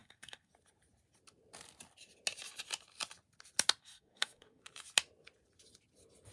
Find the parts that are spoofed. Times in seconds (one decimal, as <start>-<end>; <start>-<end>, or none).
0.0-0.5; 3.8-4.6